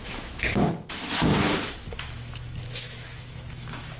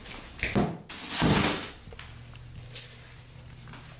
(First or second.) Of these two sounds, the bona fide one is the second